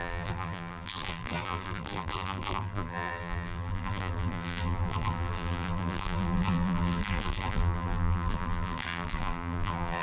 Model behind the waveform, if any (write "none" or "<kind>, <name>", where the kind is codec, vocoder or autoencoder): vocoder, BigVGAN v2